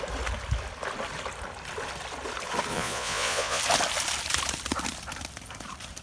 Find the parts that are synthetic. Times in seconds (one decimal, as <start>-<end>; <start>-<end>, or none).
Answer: 2.7-3.6